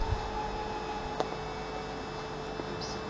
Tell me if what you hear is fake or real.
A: real